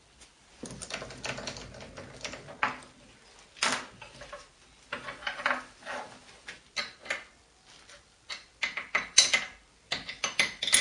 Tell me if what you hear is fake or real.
real